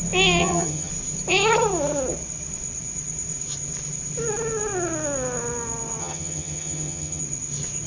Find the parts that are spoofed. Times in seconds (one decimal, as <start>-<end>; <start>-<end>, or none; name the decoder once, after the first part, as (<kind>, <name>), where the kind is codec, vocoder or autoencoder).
0.4-0.9 (vocoder, HiFi-GAN); 6.0-7.2